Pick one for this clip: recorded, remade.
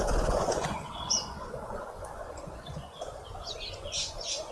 remade